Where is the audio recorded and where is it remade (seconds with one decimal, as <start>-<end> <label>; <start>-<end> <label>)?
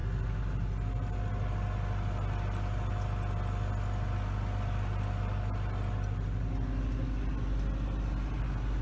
0.0-8.8 recorded